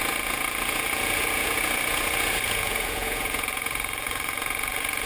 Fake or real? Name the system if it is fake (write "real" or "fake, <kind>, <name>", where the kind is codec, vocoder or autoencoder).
fake, vocoder, Vocos